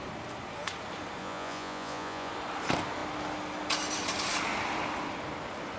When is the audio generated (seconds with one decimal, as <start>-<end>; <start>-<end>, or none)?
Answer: 1.2-2.3